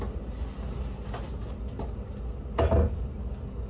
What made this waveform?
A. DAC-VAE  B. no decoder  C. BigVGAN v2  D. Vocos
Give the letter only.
B